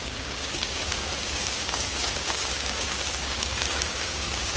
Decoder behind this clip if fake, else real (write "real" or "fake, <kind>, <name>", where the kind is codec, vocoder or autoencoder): fake, codec, DAC